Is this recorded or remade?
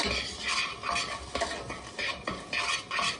recorded